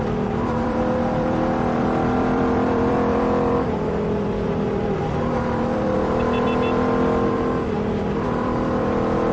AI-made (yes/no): yes